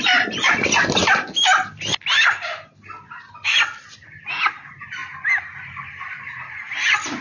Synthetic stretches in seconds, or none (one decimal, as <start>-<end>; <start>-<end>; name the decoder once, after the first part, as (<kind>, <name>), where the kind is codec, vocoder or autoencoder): none